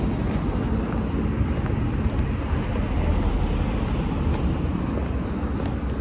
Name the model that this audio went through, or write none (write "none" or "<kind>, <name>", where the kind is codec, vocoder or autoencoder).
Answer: none